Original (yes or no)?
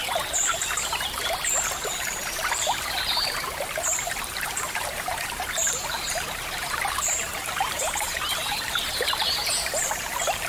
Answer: no